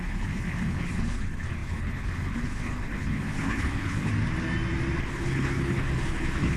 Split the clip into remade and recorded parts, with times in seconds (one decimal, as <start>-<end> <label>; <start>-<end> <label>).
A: 0.0-4.1 remade; 4.1-5.0 recorded; 5.0-6.6 remade